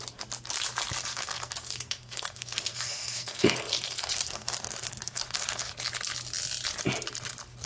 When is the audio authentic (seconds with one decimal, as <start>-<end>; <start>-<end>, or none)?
0.0-1.1; 5.7-7.7